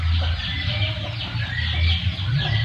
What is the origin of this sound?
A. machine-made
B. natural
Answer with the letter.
A